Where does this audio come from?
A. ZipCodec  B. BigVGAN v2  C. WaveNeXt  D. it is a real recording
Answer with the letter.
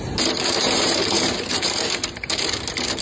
B